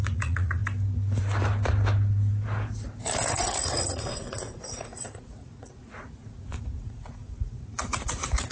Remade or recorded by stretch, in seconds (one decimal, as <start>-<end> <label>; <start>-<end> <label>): 0.0-0.6 remade; 0.6-3.3 recorded; 3.3-8.5 remade